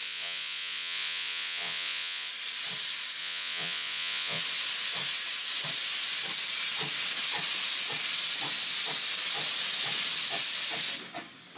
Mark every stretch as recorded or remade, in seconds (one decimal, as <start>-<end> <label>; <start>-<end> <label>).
0.0-2.3 remade; 2.3-3.2 recorded; 3.2-4.4 remade; 4.4-11.6 recorded